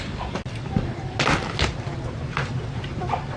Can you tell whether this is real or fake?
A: real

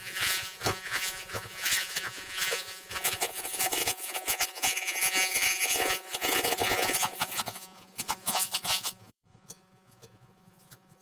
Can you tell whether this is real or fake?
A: fake